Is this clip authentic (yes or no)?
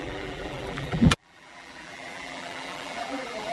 no